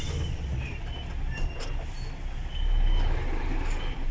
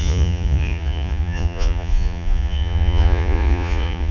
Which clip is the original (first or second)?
first